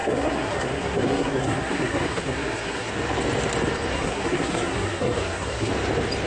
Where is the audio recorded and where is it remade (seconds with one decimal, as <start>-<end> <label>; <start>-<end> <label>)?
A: 0.0-2.9 remade; 2.9-3.9 recorded; 3.9-5.7 remade; 5.7-6.3 recorded